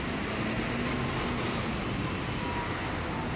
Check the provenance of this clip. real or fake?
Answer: real